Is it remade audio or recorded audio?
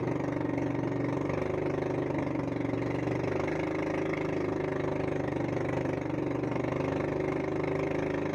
recorded